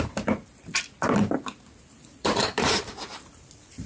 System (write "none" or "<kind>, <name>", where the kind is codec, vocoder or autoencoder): vocoder, BigVGAN v2